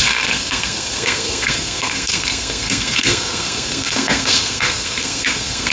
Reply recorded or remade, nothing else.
remade